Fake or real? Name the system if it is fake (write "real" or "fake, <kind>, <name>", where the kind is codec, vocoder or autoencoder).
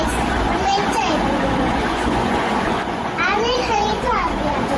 fake, vocoder, Vocos